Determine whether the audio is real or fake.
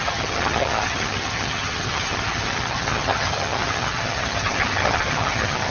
fake